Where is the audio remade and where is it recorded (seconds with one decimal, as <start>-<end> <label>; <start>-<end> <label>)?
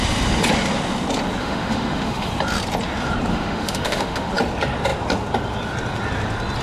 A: 0.0-1.4 recorded; 1.4-2.3 remade; 2.3-3.3 recorded; 3.3-4.3 remade; 4.3-6.6 recorded